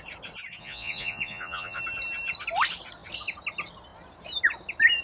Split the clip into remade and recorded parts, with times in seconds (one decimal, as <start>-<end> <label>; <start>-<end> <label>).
0.0-0.6 recorded; 0.6-1.8 remade; 1.8-5.0 recorded